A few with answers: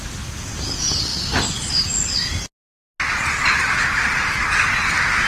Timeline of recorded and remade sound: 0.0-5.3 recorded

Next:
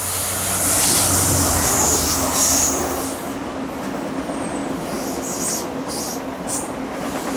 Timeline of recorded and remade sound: 0.0-7.4 recorded

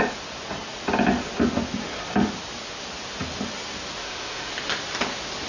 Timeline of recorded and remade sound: 0.0-4.0 recorded; 4.0-4.5 remade; 4.5-5.5 recorded

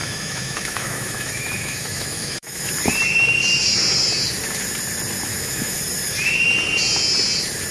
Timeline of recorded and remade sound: 0.0-2.7 remade; 2.7-5.3 recorded; 5.3-5.8 remade; 5.8-7.7 recorded

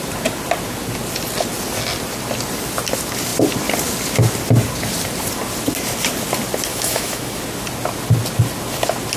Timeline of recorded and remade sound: 0.0-6.7 recorded; 6.7-7.4 remade; 7.4-9.2 recorded